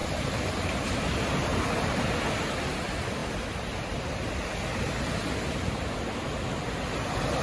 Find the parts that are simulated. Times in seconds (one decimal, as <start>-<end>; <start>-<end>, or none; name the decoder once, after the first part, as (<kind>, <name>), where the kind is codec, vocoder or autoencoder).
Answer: 0.0-1.0 (vocoder, BigVGAN v2)